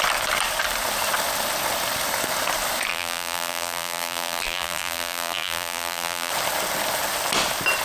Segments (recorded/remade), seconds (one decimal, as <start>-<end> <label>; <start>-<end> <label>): 0.0-2.9 recorded; 2.9-6.3 remade; 6.3-7.8 recorded